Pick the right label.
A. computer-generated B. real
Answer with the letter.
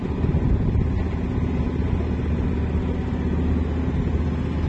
B